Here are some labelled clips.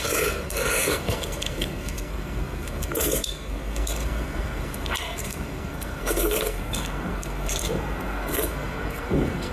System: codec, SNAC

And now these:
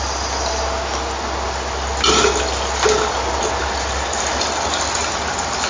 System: none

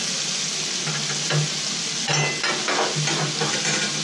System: none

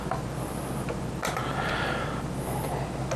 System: none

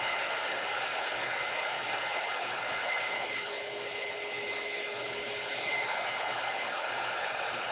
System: codec, HILCodec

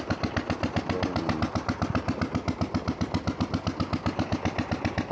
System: none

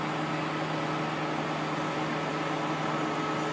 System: none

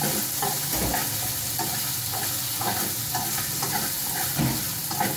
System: none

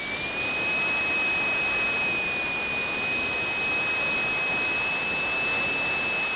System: none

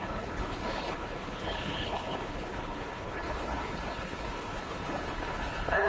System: codec, HILCodec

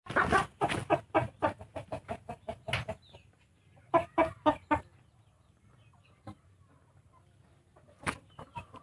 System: none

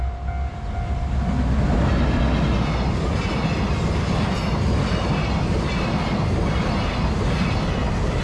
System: none